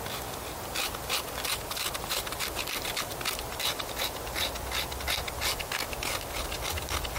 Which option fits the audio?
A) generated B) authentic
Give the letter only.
B